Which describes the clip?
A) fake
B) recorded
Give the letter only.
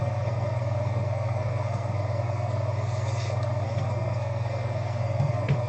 A